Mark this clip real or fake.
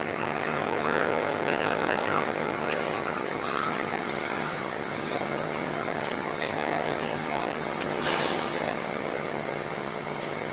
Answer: fake